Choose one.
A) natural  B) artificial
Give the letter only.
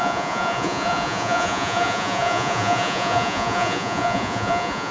B